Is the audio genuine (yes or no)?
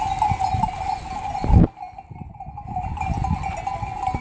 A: yes